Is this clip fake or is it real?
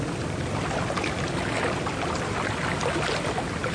real